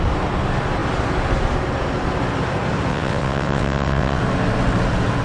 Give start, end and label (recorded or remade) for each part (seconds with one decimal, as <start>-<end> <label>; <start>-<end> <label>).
0.0-2.9 recorded; 2.9-4.2 remade; 4.2-5.2 recorded